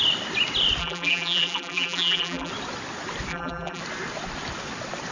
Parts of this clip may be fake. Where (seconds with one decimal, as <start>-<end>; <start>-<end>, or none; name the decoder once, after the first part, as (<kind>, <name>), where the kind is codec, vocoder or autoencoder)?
0.8-2.5 (vocoder, BigVGAN v2); 3.3-3.8